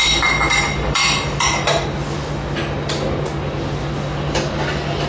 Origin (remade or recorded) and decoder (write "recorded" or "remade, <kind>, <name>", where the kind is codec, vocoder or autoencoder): recorded